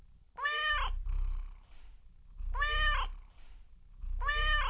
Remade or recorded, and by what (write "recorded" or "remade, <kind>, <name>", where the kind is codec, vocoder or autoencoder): recorded